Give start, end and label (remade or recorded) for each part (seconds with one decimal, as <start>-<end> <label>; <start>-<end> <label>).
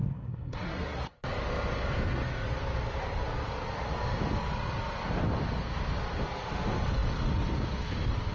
0.0-1.1 remade; 1.1-8.3 recorded